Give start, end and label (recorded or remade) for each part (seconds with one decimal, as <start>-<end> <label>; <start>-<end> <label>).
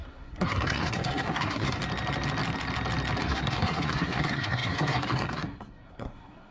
0.0-1.8 remade; 1.8-3.2 recorded; 3.2-6.5 remade